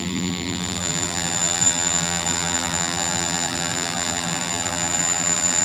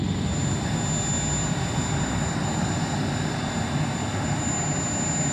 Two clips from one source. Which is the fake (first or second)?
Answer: first